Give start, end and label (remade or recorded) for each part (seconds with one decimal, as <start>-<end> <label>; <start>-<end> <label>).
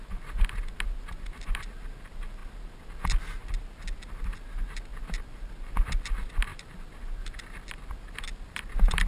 0.0-4.9 recorded; 4.9-5.5 remade; 5.5-6.5 recorded; 6.5-9.1 remade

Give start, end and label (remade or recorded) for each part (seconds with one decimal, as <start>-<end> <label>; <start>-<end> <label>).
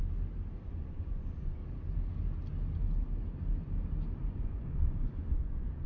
0.0-0.7 recorded; 0.7-1.6 remade; 1.6-4.3 recorded; 4.3-5.9 remade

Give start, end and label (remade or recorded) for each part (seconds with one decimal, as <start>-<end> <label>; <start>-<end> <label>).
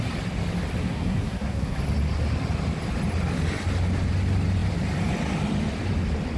0.0-0.8 recorded; 0.8-1.8 remade; 1.8-6.4 recorded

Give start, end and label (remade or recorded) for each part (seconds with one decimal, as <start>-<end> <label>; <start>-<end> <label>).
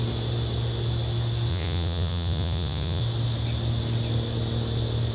0.0-1.5 recorded; 1.5-3.0 remade; 3.0-5.1 recorded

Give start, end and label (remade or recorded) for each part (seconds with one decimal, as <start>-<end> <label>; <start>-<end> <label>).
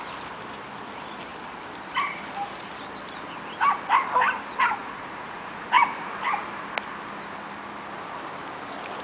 0.0-4.8 recorded; 4.8-6.2 remade; 6.2-9.0 recorded